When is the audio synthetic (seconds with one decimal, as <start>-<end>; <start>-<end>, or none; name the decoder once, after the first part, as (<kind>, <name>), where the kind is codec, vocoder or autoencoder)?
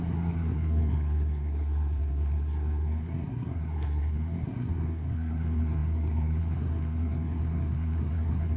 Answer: 0.0-8.6 (codec, SNAC)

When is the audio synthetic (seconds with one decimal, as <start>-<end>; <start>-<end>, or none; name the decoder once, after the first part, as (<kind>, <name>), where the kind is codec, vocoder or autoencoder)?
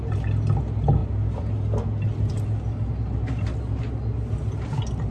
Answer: none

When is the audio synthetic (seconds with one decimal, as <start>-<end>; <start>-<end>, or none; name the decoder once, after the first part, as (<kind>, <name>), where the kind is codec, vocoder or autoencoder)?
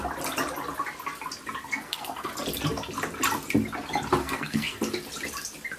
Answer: 1.6-2.3 (codec, SNAC); 4.2-4.8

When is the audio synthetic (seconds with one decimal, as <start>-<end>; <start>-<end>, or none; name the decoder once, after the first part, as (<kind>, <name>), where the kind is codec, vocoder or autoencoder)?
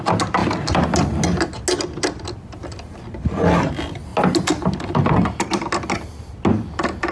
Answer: none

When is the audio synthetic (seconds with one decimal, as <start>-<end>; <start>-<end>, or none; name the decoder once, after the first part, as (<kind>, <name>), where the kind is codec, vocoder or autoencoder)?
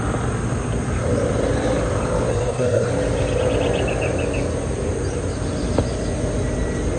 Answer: 2.3-2.9 (codec, SNAC)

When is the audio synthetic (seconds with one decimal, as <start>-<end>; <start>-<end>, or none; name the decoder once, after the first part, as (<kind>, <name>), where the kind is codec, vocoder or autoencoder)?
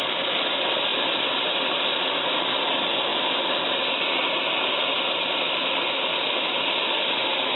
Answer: none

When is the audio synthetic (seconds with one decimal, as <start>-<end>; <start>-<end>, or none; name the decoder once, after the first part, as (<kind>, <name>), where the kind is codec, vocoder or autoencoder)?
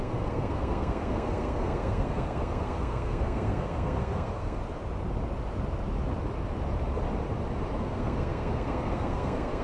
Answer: 0.0-4.6 (codec, SNAC); 7.8-9.6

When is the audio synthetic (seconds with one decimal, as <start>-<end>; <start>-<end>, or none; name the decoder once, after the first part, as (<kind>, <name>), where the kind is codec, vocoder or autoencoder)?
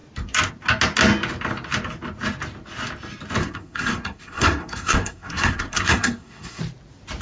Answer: 3.4-6.6 (codec, SNAC)